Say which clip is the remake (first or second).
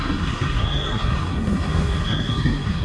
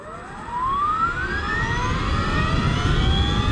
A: first